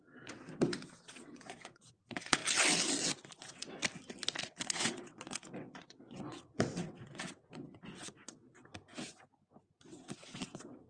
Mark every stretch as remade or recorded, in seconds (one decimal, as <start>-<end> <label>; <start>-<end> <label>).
0.0-2.4 remade; 2.4-3.4 recorded; 3.4-3.8 remade; 3.8-4.4 recorded; 4.4-8.7 remade; 8.7-9.8 recorded; 9.8-10.9 remade